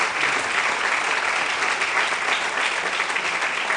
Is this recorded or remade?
recorded